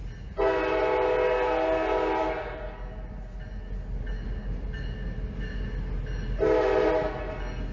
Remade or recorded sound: recorded